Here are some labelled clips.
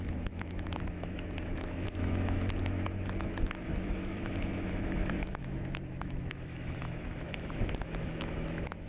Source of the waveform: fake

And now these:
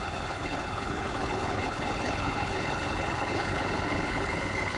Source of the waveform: fake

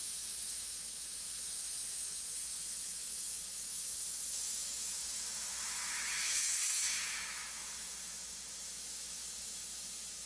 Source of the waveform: fake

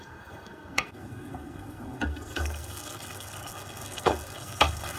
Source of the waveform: fake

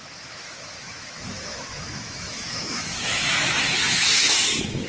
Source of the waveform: fake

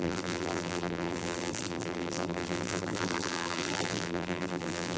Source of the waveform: fake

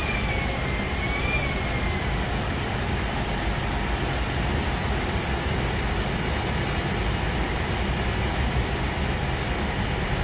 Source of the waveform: real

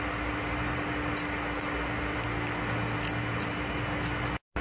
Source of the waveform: real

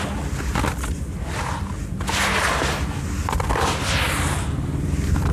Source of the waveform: real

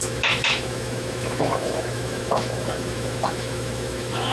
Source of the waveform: fake